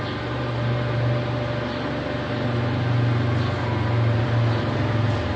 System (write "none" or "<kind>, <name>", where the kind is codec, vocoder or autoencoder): none